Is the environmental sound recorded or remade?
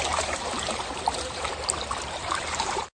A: remade